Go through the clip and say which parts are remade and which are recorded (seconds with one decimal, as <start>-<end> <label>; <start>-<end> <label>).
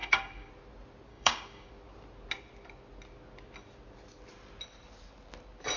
0.0-0.5 remade; 0.5-1.1 recorded; 1.1-1.7 remade; 1.7-5.8 recorded